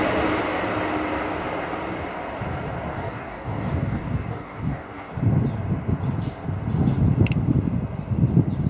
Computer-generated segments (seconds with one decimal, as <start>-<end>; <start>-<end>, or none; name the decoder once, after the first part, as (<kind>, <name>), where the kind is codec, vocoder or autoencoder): 2.9-5.1 (codec, DAC)